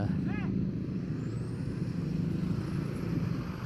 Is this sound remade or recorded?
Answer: recorded